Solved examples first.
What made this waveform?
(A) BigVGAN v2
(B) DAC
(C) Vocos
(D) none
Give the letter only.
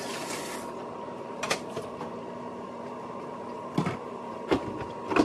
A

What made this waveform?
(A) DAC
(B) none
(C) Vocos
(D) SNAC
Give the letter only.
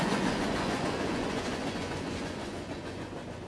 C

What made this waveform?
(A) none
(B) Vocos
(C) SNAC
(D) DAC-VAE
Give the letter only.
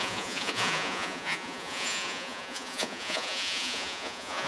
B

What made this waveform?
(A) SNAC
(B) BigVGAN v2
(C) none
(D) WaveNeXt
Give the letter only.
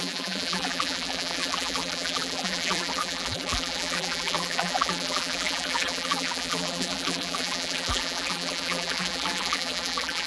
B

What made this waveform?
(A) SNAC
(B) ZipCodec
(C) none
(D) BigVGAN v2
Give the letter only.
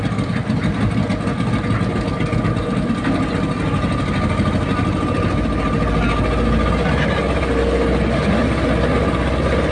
C